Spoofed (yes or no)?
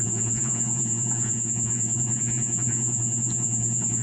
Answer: yes